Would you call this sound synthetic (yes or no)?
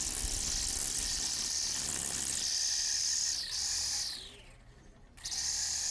no